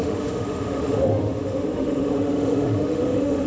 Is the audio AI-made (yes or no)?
yes